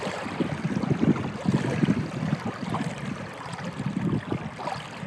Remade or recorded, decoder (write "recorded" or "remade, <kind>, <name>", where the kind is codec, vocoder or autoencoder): recorded